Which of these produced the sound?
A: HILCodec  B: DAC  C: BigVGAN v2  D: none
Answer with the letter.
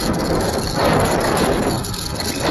D